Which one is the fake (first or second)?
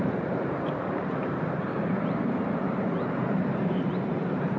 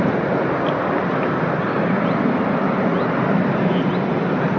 first